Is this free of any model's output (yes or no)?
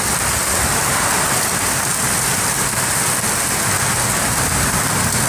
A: yes